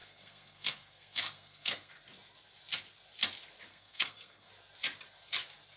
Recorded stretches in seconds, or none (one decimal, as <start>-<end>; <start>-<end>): 1.9-3.7; 4.5-5.8